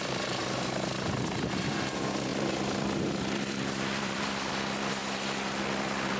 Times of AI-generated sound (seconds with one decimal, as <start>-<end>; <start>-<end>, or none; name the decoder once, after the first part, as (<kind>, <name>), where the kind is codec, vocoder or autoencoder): 0.0-0.4 (vocoder, BigVGAN v2); 1.5-5.0; 5.6-6.2